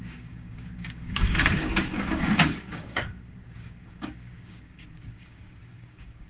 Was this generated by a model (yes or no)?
yes